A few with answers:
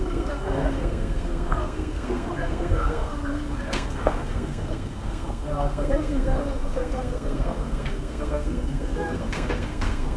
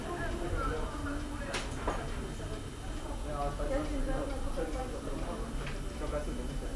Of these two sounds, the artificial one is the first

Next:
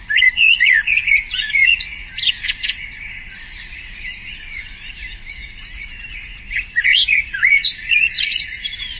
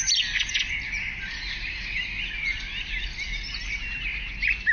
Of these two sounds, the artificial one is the first